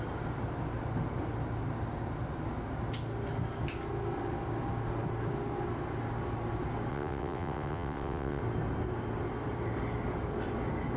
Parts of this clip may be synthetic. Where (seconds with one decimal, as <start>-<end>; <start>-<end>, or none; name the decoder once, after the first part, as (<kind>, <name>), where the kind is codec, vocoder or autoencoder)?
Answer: 6.9-8.4 (vocoder, WaveNeXt)